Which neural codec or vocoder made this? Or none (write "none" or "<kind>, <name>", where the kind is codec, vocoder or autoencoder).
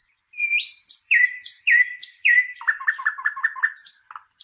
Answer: vocoder, BigVGAN v2